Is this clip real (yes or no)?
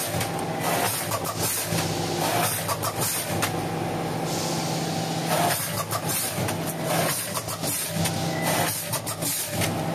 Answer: yes